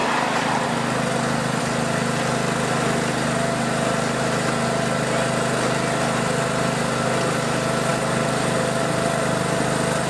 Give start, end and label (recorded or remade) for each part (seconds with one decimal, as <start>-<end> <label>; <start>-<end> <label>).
0.0-10.1 recorded